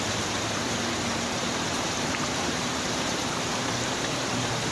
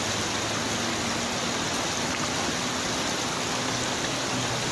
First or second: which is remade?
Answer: first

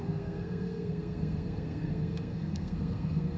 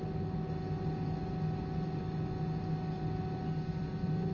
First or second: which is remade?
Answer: first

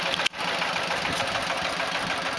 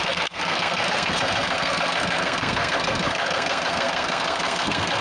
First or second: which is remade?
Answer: second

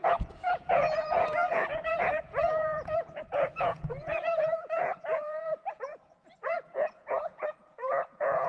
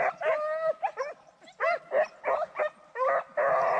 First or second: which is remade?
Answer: first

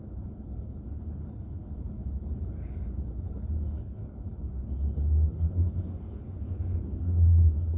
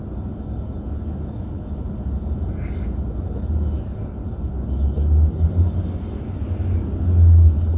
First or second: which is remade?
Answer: first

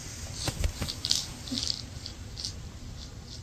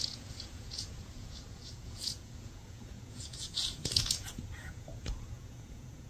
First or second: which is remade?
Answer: second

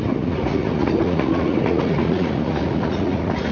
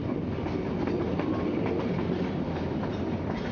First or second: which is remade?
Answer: first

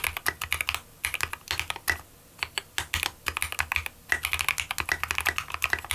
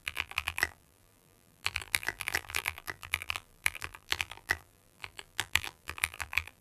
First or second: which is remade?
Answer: second